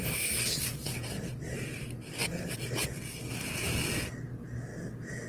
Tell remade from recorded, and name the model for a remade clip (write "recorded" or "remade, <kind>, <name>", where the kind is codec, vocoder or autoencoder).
recorded